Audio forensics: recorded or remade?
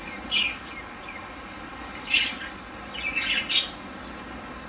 recorded